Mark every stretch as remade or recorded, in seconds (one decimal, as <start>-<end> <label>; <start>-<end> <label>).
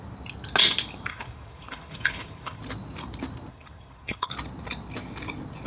0.0-1.1 recorded; 1.1-2.6 remade; 2.6-3.5 recorded; 3.5-4.3 remade; 4.3-5.7 recorded